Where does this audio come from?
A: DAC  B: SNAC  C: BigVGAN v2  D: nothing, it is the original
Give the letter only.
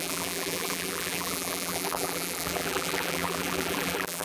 C